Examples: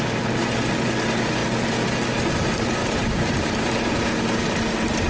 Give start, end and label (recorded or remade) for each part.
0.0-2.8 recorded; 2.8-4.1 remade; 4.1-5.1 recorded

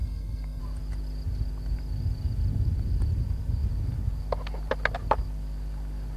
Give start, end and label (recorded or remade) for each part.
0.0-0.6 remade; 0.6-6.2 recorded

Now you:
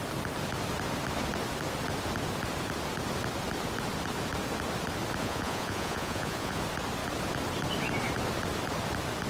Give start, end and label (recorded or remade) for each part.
0.0-5.2 recorded; 5.2-6.6 remade; 6.6-9.3 recorded